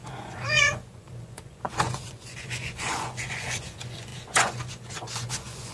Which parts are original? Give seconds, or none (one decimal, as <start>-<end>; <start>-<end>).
none